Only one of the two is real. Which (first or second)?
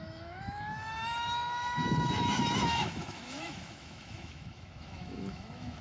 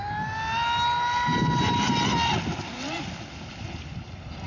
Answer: second